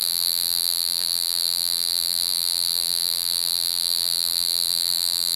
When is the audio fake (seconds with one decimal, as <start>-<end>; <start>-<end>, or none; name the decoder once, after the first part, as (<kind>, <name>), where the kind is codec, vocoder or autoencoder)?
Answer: 0.0-5.4 (vocoder, BigVGAN v2)